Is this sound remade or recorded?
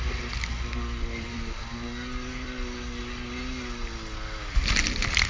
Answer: recorded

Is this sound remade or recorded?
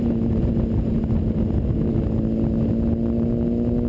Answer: recorded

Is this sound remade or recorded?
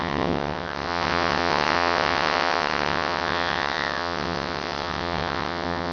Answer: remade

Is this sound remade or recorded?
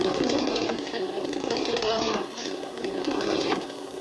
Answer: remade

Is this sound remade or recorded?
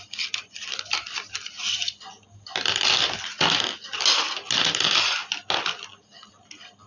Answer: recorded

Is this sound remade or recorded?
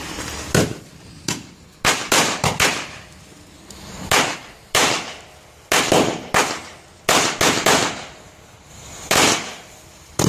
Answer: recorded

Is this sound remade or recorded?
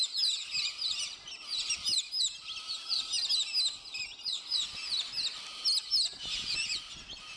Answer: recorded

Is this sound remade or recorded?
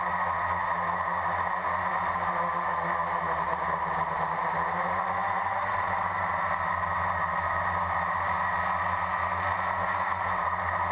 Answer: recorded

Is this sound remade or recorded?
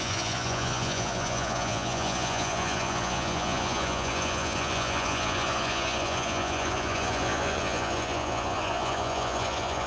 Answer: remade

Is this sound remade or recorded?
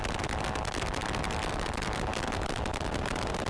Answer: recorded